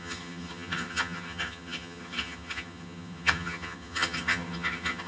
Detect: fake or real fake